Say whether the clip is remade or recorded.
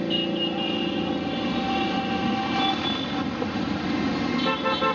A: recorded